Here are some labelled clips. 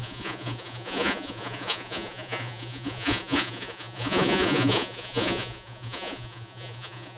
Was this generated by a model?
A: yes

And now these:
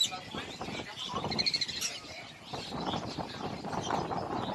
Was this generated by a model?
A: no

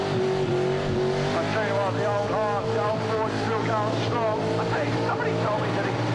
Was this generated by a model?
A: no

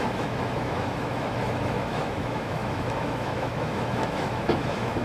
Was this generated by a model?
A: yes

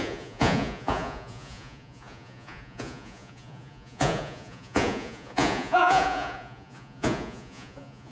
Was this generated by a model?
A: yes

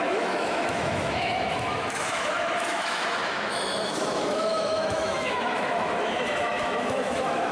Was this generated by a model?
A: yes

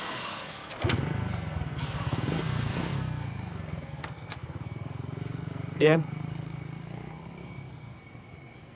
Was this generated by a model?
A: yes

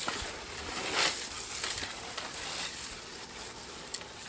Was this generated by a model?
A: no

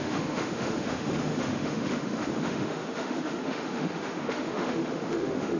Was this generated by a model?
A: yes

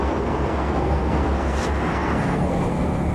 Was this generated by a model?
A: yes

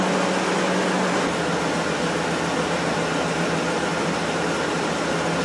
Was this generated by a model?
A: no